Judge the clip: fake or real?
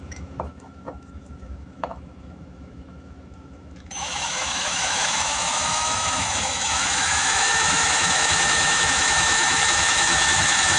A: fake